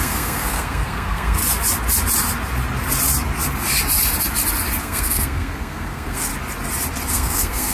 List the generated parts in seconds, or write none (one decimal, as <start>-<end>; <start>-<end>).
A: 0.0-1.4; 4.8-6.3; 7.1-7.7